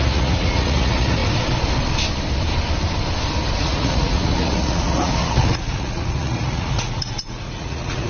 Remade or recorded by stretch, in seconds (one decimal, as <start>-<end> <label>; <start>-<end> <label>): 0.0-1.2 remade; 1.2-3.6 recorded; 3.6-8.1 remade